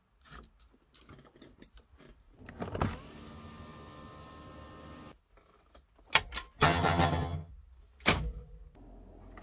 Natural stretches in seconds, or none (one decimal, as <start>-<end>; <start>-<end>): 0.0-6.6; 7.5-9.4